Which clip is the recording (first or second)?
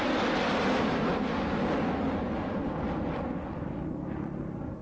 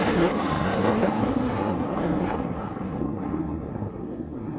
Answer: first